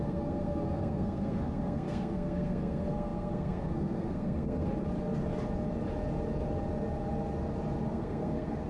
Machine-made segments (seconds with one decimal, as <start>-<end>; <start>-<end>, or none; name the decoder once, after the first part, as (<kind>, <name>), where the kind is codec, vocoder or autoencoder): 0.0-4.7 (codec, SNAC); 7.9-8.7